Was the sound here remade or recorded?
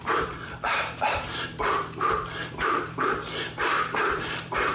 remade